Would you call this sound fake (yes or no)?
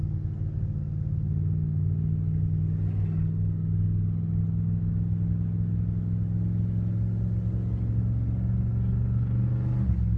no